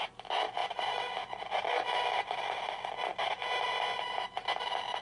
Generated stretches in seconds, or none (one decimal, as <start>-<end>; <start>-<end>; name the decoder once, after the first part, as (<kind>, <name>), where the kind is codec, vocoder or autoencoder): none